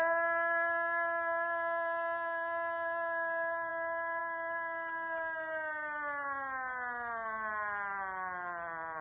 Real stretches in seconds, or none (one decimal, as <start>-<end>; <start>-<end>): 0.0-9.0